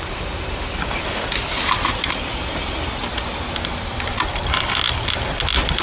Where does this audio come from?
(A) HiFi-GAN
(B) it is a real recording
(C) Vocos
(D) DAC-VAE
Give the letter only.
B